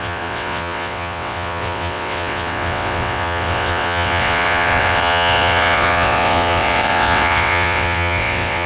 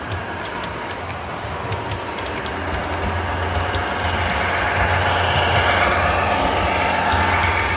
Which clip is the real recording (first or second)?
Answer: second